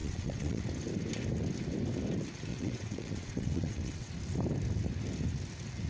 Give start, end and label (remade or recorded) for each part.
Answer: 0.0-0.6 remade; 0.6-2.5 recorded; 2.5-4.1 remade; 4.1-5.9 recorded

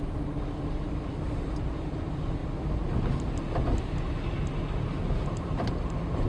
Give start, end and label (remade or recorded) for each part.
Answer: 0.0-6.3 recorded

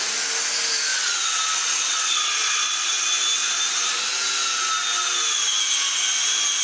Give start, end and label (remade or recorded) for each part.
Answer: 0.0-0.9 recorded; 0.9-2.9 remade; 2.9-6.6 recorded

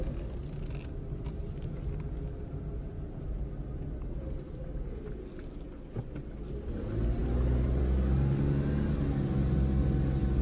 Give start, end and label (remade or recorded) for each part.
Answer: 0.0-10.4 recorded